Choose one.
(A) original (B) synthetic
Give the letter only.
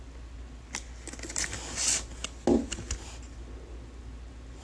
A